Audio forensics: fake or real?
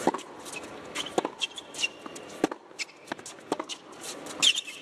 real